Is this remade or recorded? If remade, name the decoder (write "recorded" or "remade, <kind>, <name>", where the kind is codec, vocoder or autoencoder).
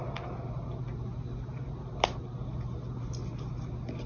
recorded